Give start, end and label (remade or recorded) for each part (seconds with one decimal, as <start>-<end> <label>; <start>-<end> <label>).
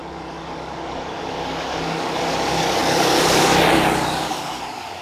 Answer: 0.0-5.0 remade